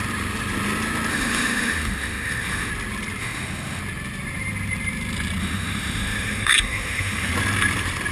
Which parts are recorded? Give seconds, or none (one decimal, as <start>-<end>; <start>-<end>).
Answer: 0.0-1.1; 2.7-3.2; 3.8-5.4; 7.3-8.1